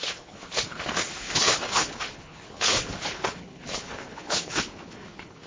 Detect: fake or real fake